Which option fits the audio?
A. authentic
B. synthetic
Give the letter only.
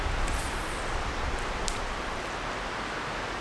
A